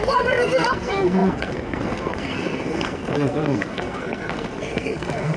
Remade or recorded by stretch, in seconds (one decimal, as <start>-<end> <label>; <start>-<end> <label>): 0.0-5.4 remade